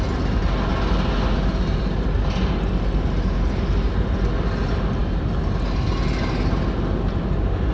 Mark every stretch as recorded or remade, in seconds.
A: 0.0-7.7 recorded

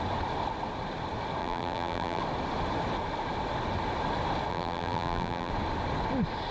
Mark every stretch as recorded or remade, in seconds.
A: 0.0-1.4 recorded; 1.4-2.2 remade; 2.2-4.5 recorded; 4.5-5.5 remade; 5.5-6.5 recorded

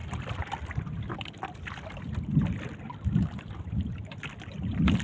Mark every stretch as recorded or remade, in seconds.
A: 0.0-5.0 recorded

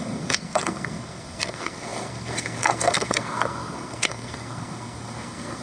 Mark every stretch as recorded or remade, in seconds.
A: 0.0-5.6 remade

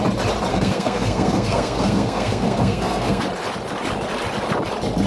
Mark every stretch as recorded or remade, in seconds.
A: 0.0-0.5 recorded; 0.5-3.2 remade; 3.2-5.1 recorded

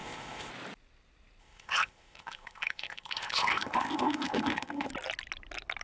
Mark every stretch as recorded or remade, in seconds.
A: 0.0-0.5 remade; 0.5-1.4 recorded; 1.4-4.9 remade; 4.9-5.8 recorded

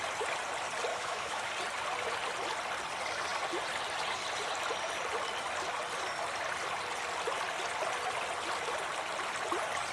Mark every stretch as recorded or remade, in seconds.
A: 0.0-0.9 recorded; 0.9-1.5 remade; 1.5-9.9 recorded